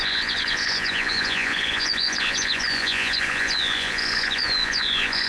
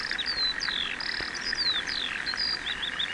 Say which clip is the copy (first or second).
first